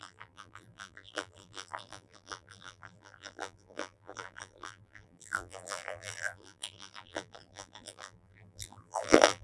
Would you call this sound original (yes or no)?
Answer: no